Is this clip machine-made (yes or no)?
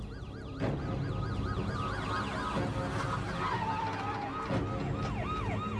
no